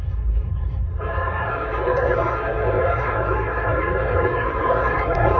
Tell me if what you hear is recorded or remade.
remade